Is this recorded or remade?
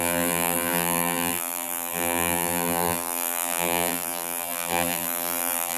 remade